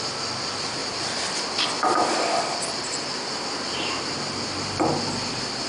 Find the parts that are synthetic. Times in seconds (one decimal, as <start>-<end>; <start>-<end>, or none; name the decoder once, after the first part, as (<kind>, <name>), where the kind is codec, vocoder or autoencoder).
0.0-5.7 (vocoder, BigVGAN v2)